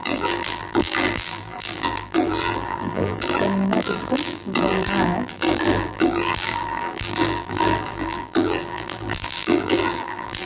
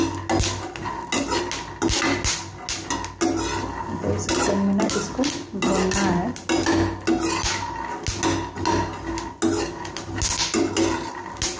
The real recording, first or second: second